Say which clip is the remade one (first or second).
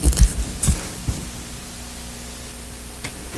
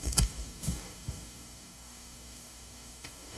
second